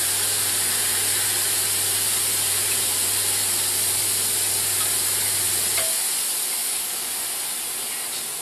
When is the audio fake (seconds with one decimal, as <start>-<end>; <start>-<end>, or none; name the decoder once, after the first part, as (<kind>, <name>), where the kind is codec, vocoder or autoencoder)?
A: 6.6-7.1 (codec, DAC)